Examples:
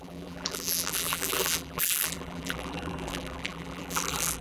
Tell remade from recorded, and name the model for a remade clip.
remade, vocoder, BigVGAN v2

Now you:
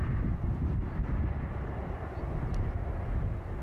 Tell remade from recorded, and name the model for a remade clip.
recorded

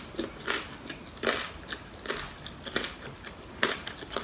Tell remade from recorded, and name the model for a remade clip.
recorded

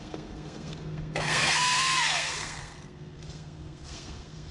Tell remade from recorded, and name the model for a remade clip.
remade, codec, SNAC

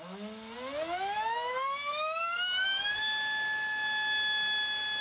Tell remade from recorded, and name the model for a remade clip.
recorded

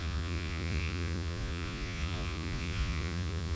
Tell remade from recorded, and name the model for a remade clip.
remade, vocoder, Vocos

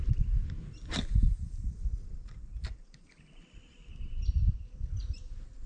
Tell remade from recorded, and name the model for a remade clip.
recorded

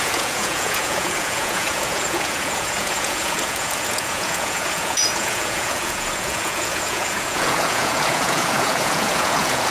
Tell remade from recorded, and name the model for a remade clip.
remade, vocoder, Vocos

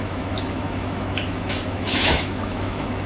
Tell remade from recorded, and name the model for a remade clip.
remade, autoencoder, DAC-VAE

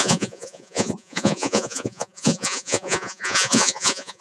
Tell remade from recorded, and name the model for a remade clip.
remade, vocoder, Vocos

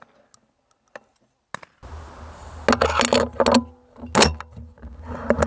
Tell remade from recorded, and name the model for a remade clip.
recorded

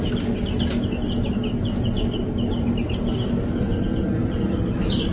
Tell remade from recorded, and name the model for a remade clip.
recorded